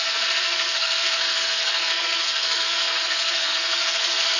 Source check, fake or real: fake